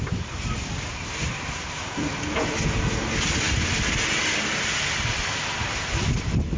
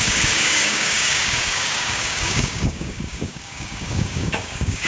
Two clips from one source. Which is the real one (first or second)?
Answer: first